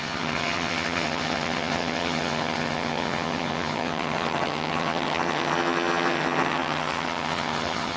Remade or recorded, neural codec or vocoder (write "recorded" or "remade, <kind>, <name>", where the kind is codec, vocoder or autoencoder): remade, vocoder, HiFi-GAN